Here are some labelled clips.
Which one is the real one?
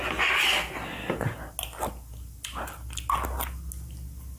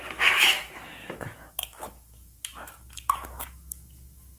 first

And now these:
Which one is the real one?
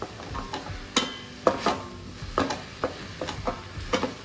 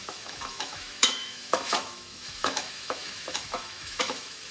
first